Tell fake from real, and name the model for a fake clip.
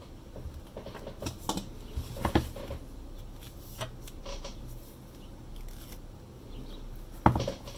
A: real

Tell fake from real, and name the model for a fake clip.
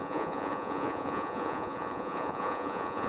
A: fake, vocoder, Vocos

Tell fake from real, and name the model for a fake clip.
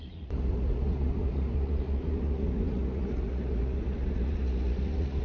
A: fake, vocoder, Vocos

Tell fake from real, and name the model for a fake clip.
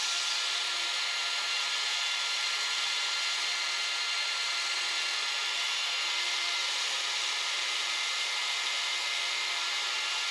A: fake, vocoder, BigVGAN v2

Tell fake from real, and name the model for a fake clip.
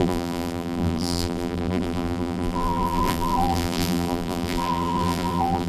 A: fake, vocoder, BigVGAN v2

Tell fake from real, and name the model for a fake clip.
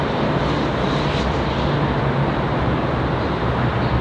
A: real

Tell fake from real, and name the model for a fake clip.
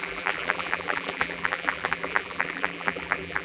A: fake, vocoder, BigVGAN v2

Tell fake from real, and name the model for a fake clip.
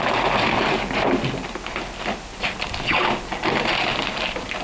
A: real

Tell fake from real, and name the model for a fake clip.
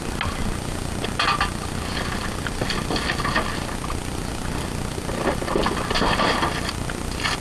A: real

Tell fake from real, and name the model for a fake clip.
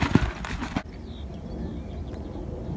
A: real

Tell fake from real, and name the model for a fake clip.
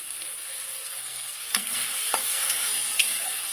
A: fake, codec, SNAC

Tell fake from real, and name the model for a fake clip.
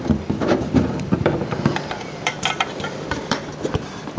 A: fake, vocoder, BigVGAN v2